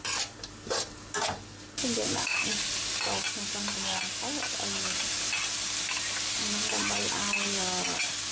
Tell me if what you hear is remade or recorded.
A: recorded